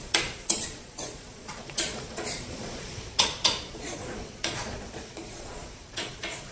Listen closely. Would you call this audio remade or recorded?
remade